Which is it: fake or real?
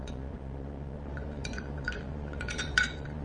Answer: fake